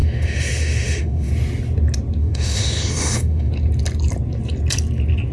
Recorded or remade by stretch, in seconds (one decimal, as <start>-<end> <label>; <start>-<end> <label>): 0.0-1.3 remade; 1.3-2.2 recorded; 2.2-3.5 remade; 3.5-5.3 recorded